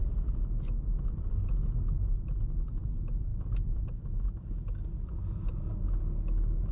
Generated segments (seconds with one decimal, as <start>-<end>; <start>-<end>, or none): none

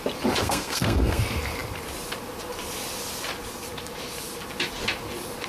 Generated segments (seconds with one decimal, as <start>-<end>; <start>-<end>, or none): 0.4-1.2

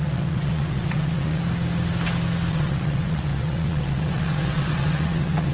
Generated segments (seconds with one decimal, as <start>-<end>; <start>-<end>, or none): 0.0-1.4; 2.5-5.5

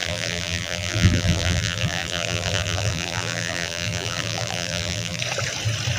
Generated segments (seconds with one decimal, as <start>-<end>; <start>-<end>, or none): 0.0-5.2

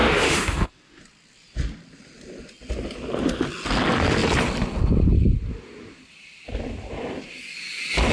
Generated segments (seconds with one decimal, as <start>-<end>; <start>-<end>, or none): 0.0-1.0

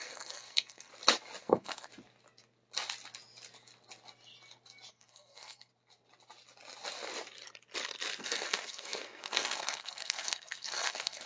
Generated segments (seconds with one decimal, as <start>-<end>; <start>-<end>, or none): 0.0-0.9; 1.4-1.9; 4.9-5.7; 8.2-11.3